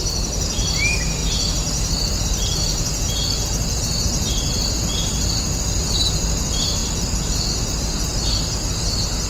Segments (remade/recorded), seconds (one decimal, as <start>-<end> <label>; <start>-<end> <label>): 0.0-9.3 recorded